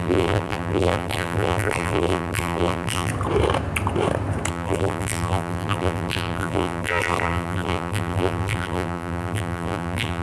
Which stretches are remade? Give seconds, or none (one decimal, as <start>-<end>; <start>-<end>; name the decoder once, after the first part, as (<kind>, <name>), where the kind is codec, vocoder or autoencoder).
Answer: 0.0-3.1 (vocoder, BigVGAN v2); 4.5-10.2